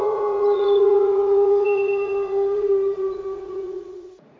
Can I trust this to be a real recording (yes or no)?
no